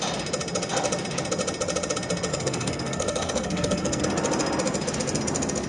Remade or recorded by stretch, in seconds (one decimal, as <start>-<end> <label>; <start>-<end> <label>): 0.0-2.3 recorded; 2.3-4.0 remade; 4.0-5.7 recorded